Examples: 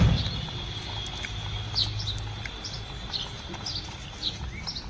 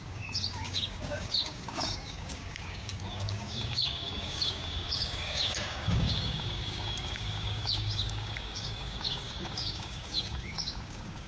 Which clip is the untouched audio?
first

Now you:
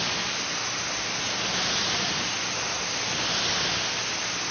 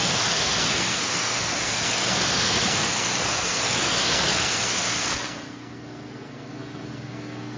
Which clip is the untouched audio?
first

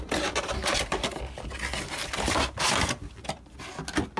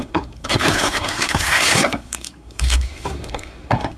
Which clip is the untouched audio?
first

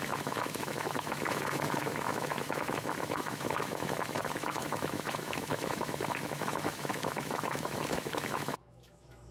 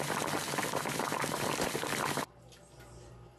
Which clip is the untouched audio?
second